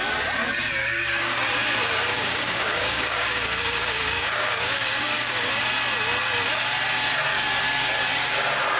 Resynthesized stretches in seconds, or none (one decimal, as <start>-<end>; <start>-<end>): 0.8-1.4; 2.1-5.5